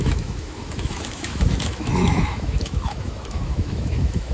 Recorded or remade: remade